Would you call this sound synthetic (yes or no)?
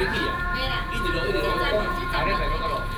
yes